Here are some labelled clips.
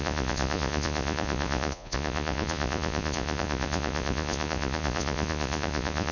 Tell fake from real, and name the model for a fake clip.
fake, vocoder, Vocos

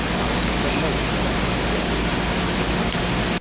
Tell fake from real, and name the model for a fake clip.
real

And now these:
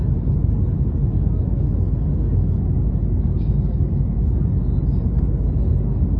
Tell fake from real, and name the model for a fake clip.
real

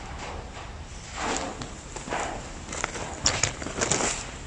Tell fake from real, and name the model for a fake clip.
real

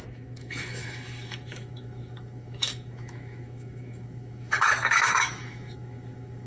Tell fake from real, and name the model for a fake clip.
fake, autoencoder, DAC-VAE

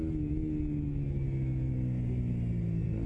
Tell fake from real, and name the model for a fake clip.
real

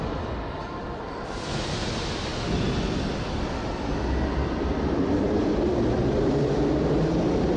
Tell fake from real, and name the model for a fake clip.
real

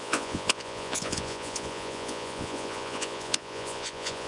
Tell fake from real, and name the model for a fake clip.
fake, vocoder, Vocos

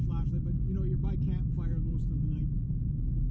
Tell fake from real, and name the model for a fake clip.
real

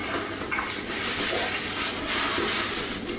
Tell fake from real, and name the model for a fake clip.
real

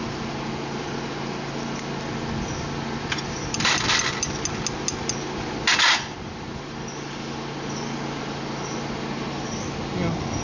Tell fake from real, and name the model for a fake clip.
real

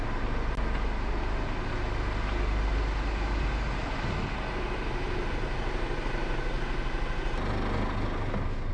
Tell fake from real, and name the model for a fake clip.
real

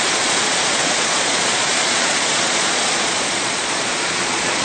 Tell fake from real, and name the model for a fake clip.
fake, vocoder, Vocos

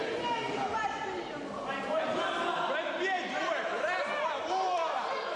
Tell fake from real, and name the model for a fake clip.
fake, vocoder, BigVGAN v2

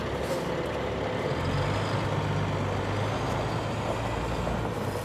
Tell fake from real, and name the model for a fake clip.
real